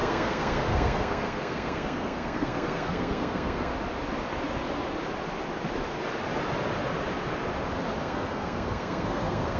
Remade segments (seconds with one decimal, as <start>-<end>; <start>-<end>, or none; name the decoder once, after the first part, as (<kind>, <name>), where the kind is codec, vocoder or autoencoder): 0.0-3.7 (codec, SNAC); 8.0-9.6